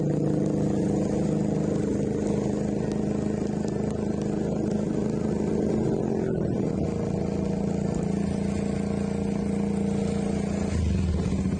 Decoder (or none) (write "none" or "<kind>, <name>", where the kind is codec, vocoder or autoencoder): none